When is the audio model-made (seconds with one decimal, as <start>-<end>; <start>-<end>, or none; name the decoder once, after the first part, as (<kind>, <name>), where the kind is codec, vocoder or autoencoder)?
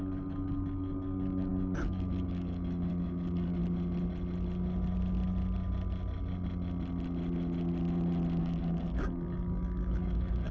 0.0-3.6 (codec, DAC); 8.4-10.5